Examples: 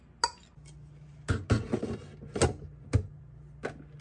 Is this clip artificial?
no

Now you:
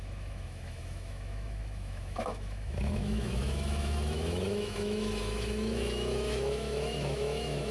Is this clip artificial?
yes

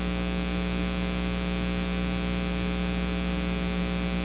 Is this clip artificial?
no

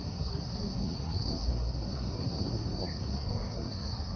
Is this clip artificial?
yes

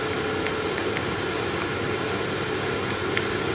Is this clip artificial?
no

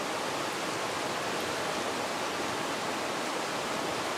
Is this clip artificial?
no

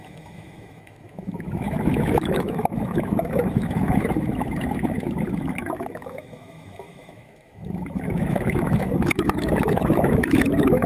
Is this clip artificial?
yes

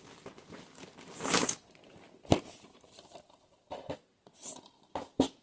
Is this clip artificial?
no